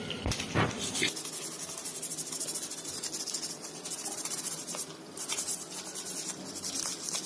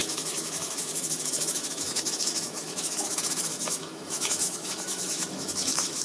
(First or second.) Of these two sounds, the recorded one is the first